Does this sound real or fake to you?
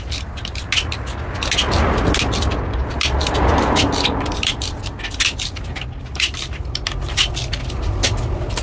real